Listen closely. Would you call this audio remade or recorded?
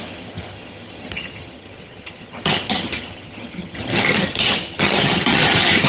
remade